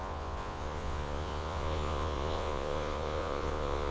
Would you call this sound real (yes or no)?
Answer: no